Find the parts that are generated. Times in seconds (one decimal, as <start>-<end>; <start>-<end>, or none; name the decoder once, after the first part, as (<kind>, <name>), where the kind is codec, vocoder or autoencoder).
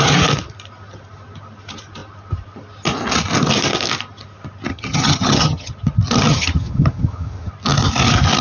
4.7-5.7 (vocoder, HiFi-GAN); 6.3-7.5